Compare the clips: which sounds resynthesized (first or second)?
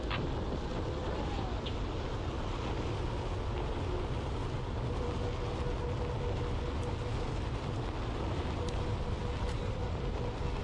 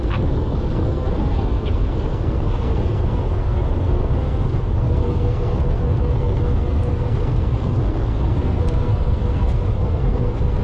second